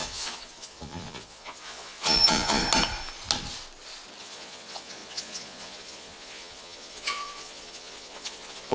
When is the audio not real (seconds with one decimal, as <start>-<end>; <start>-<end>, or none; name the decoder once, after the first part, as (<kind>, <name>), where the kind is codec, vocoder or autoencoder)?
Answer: 0.0-2.6 (vocoder, Vocos); 4.2-8.7